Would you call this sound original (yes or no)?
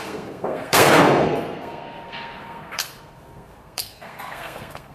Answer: no